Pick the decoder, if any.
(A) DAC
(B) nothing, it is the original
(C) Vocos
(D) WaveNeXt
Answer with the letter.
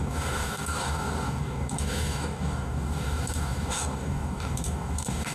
A